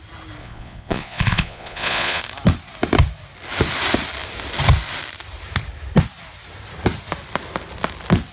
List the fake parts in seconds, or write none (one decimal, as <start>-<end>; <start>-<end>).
0.4-2.2